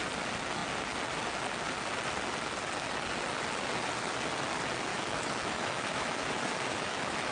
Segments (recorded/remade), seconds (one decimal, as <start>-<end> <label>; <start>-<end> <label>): 0.0-4.9 recorded; 4.9-7.3 remade